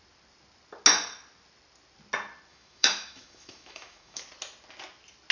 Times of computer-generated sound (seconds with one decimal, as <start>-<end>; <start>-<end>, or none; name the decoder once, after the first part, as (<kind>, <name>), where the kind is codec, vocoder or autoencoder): 2.5-4.2 (autoencoder, DAC-VAE)